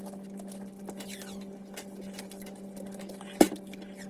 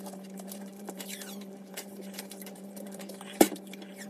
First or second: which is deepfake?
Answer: second